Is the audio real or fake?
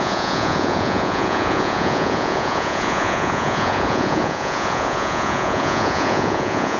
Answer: fake